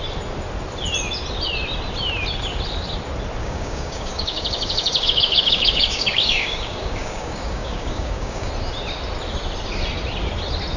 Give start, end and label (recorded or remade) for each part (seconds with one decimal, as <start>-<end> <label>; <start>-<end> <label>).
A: 0.0-3.4 recorded; 3.4-8.5 remade; 8.5-10.8 recorded